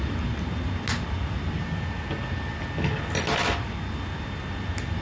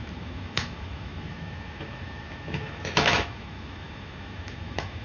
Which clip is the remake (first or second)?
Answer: second